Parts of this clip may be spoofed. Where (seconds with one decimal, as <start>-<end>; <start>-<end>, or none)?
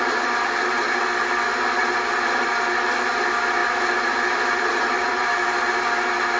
1.8-2.5; 3.6-5.3